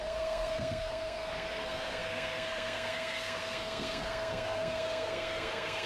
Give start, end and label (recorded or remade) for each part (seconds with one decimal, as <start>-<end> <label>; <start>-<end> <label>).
0.0-5.9 remade